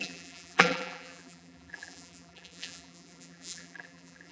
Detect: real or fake fake